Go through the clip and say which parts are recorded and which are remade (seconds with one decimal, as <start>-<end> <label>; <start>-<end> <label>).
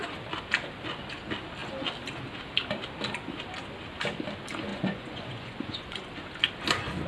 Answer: 0.0-4.7 recorded; 4.7-6.1 remade; 6.1-7.1 recorded